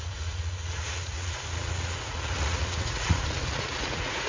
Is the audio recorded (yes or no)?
no